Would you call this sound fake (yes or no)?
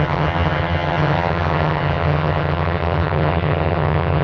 yes